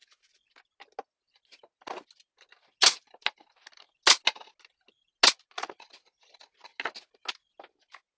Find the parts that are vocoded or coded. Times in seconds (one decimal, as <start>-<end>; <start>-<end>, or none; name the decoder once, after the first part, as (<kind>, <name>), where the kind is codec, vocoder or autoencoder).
none